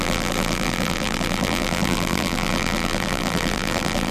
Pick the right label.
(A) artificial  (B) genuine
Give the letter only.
A